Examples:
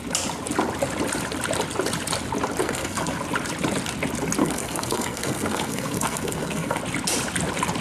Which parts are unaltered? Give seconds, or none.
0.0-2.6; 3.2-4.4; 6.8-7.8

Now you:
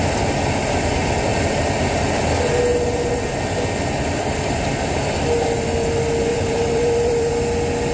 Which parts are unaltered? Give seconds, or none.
0.0-1.3; 2.3-6.3; 7.3-7.9

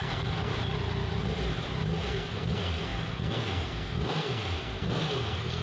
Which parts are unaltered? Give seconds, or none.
0.5-2.0

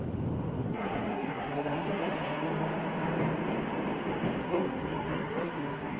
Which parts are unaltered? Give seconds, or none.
0.0-0.6; 2.5-4.4

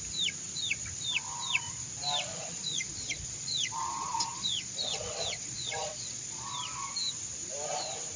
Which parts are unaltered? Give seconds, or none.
0.0-2.3; 6.9-8.2

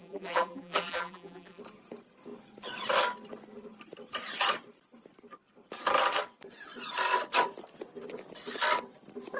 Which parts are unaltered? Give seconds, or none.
1.6-9.4

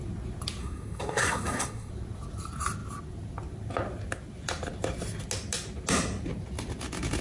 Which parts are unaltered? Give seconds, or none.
0.0-0.6; 1.9-7.2

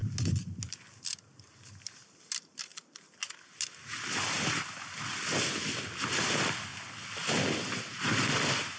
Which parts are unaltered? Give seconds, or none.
0.0-8.8